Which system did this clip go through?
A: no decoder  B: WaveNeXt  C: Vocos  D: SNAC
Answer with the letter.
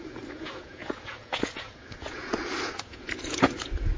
C